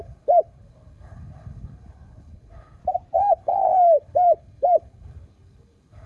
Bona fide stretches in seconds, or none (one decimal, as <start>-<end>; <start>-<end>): 2.8-3.3